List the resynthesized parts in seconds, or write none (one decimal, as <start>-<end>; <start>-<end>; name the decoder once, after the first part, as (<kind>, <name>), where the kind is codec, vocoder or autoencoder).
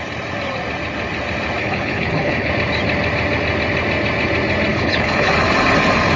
1.6-2.5 (codec, HILCodec); 4.7-5.3